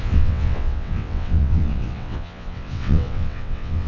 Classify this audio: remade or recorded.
remade